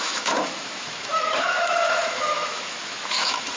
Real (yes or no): no